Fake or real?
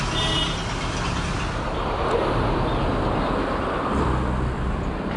real